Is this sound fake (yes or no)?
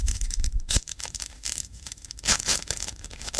yes